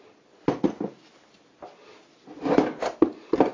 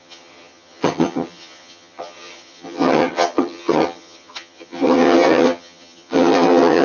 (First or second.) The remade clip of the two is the second